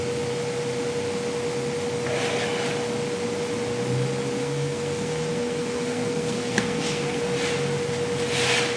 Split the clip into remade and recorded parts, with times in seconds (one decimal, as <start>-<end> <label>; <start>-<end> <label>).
0.0-4.4 recorded; 4.4-7.2 remade; 7.2-8.8 recorded